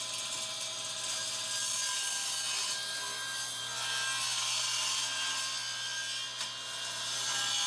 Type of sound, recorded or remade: recorded